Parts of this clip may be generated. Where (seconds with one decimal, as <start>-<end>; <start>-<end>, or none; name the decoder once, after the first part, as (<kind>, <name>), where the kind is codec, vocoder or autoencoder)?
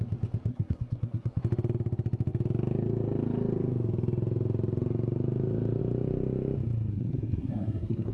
0.5-1.4 (codec, SNAC); 6.9-8.1